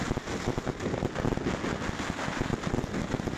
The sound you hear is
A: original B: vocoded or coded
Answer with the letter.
A